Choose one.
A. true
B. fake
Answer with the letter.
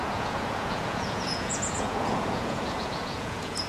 B